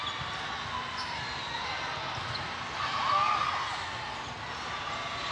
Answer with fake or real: real